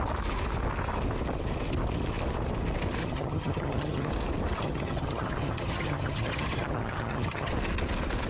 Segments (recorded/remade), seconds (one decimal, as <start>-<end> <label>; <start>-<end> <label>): 0.0-3.0 recorded; 3.0-4.1 remade; 4.1-4.6 recorded; 4.6-7.5 remade; 7.5-8.3 recorded

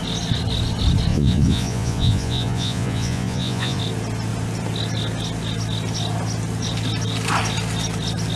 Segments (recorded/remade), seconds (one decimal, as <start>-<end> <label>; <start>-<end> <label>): 0.0-1.1 recorded; 1.1-3.8 remade; 3.8-8.4 recorded

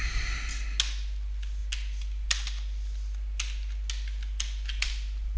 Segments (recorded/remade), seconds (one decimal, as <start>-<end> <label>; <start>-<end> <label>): 0.0-5.4 recorded

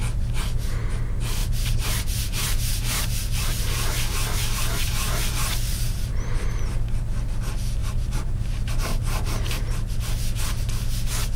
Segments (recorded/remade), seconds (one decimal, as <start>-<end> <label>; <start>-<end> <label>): 0.0-1.4 recorded; 1.4-3.5 remade; 3.5-5.7 recorded; 5.7-6.4 remade; 6.4-7.8 recorded; 7.8-10.1 remade; 10.1-11.4 recorded